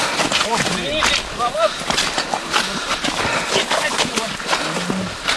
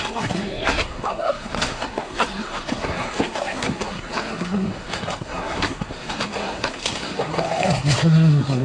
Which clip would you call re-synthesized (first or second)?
second